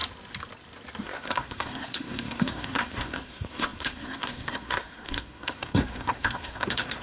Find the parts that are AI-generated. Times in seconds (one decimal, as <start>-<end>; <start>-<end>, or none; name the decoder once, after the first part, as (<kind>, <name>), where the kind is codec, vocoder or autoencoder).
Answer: 1.0-7.0 (codec, SNAC)